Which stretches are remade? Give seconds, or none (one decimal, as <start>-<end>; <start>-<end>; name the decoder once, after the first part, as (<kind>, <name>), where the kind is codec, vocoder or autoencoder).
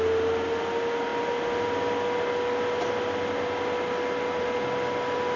none